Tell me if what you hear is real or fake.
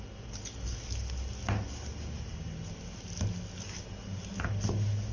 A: real